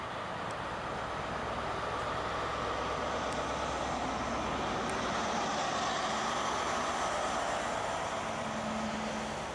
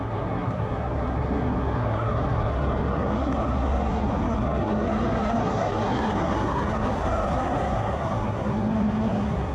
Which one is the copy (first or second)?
second